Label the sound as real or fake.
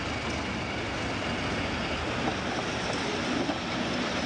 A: real